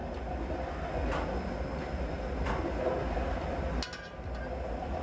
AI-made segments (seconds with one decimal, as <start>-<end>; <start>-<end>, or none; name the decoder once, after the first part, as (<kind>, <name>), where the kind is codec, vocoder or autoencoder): none